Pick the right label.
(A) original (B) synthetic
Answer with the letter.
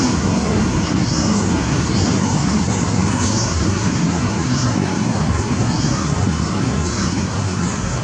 B